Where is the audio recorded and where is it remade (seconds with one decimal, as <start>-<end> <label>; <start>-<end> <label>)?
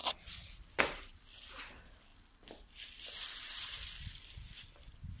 0.0-2.1 recorded; 2.1-5.2 remade